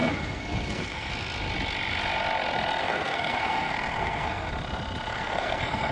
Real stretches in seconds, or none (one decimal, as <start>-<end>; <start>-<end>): 1.1-2.8; 4.5-5.1